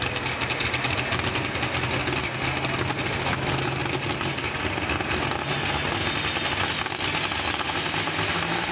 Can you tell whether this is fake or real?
real